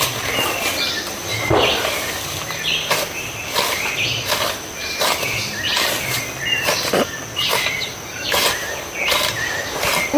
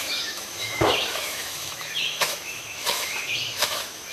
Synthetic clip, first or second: second